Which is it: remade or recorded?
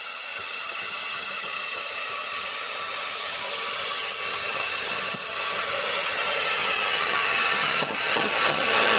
remade